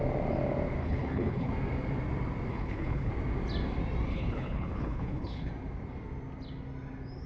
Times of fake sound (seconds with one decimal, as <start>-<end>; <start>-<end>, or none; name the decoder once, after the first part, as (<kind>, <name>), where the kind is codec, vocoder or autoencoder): 0.8-1.5 (codec, HILCodec); 2.5-3.1; 4.1-5.5